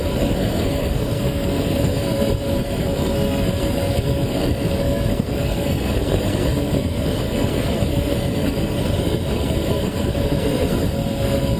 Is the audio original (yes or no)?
no